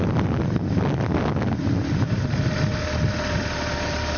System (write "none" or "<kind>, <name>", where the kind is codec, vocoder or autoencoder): none